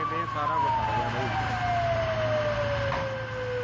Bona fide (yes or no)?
yes